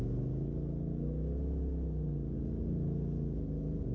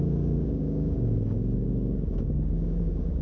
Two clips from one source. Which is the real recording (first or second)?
first